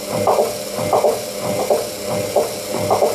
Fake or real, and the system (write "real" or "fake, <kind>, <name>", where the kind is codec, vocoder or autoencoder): real